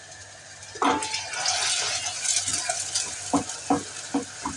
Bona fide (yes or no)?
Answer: yes